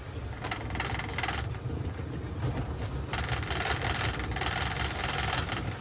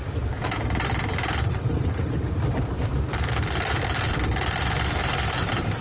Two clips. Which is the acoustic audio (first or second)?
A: first